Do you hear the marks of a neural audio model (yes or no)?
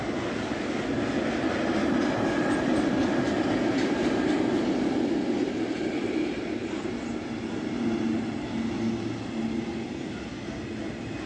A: no